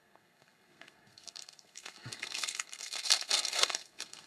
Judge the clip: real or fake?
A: fake